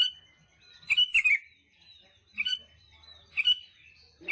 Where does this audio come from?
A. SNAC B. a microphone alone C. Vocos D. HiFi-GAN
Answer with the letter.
B